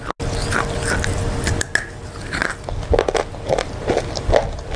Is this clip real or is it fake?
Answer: real